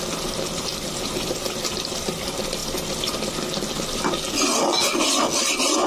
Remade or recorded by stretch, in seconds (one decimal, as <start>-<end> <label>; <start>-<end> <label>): 0.0-5.9 recorded